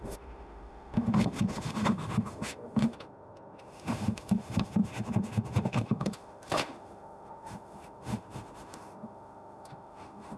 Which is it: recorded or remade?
remade